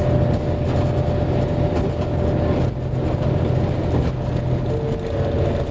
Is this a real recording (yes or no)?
yes